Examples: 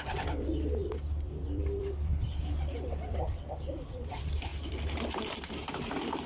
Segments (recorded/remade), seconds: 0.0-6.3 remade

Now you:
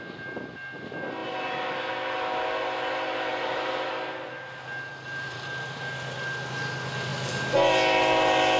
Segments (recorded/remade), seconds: 0.0-3.3 recorded; 3.3-3.9 remade; 3.9-4.9 recorded; 4.9-5.9 remade; 5.9-8.6 recorded

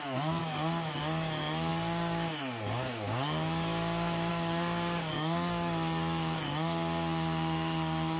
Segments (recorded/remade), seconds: 0.0-8.2 remade